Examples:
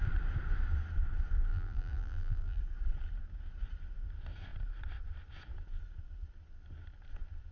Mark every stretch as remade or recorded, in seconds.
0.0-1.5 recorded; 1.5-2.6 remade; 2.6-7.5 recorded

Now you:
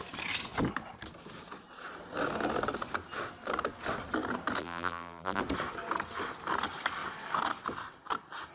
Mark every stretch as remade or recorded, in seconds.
0.0-4.6 recorded; 4.6-5.4 remade; 5.4-8.5 recorded

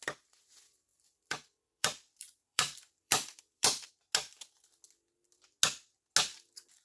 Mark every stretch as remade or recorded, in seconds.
0.0-0.9 recorded; 0.9-3.9 remade; 3.9-6.8 recorded

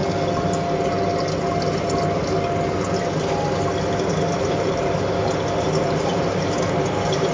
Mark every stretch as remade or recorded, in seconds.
0.0-4.4 recorded; 4.4-7.3 remade

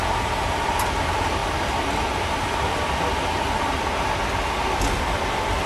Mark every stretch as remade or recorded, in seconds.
0.0-5.7 recorded

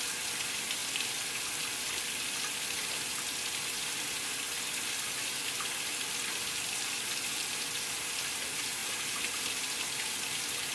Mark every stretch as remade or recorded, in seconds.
0.0-0.8 recorded; 0.8-2.9 remade; 2.9-8.8 recorded; 8.8-9.5 remade; 9.5-10.7 recorded

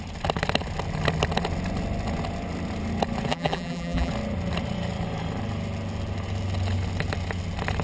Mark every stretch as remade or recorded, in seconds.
0.0-3.3 recorded; 3.3-4.1 remade; 4.1-7.8 recorded

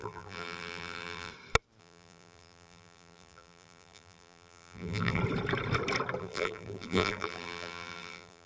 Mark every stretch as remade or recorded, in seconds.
0.0-1.3 remade; 1.3-1.8 recorded; 1.8-5.2 remade; 5.2-6.2 recorded; 6.2-8.5 remade